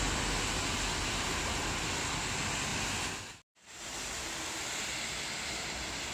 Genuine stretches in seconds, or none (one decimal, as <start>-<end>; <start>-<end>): 0.0-6.1